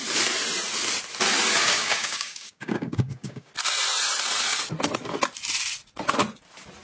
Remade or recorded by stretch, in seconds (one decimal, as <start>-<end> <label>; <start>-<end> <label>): 0.0-1.6 recorded; 1.6-3.5 remade; 3.5-6.8 recorded